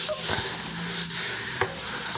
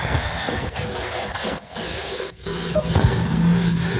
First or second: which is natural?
first